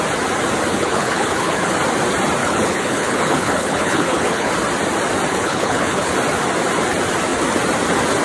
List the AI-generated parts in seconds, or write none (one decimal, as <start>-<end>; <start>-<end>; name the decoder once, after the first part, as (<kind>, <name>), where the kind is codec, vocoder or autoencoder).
0.7-1.7 (codec, HILCodec); 2.4-4.5; 5.3-6.1